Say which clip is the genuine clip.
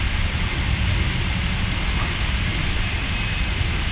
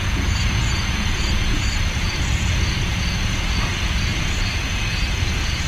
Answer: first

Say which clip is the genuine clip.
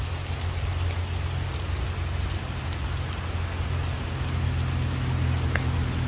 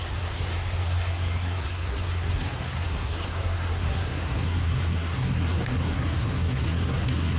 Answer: first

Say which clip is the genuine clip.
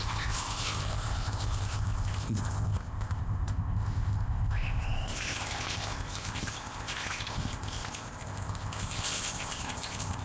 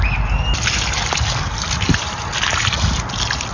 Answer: second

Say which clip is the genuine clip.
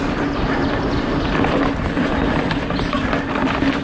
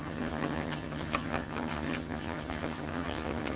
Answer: first